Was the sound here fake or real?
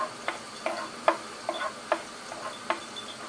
real